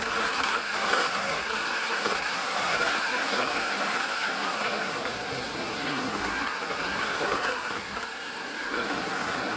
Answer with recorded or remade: remade